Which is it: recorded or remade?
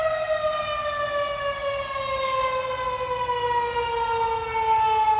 recorded